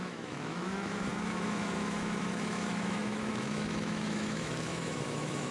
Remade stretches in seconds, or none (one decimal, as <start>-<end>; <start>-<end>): 0.0-5.5